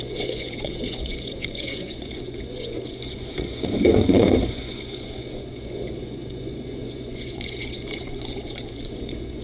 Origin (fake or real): fake